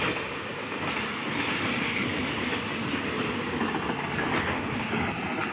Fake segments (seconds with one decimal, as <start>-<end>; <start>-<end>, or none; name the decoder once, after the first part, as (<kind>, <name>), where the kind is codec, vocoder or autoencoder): 4.4-4.9 (codec, DAC)